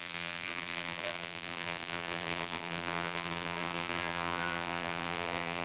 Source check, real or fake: fake